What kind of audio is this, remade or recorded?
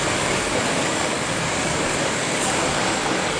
remade